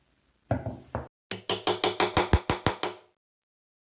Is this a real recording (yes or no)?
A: yes